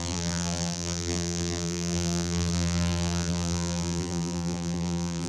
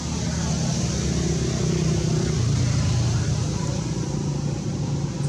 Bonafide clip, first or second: second